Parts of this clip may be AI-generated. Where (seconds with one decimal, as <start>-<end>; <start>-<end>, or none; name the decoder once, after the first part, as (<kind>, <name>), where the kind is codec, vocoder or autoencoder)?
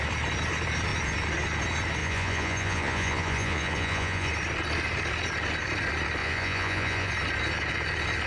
2.0-4.3 (vocoder, Vocos); 6.2-7.1